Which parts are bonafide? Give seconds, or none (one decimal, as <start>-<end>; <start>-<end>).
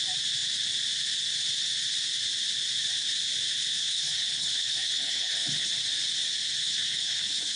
0.0-3.8; 5.7-6.6